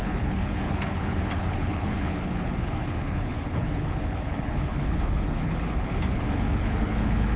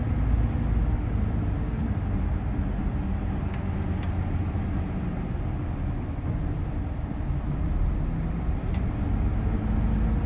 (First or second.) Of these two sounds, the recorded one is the second